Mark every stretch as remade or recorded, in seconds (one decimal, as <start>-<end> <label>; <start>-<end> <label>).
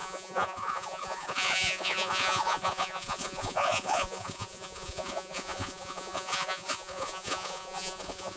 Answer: 0.0-8.4 remade